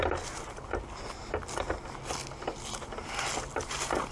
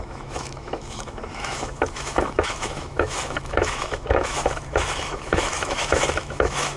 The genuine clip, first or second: first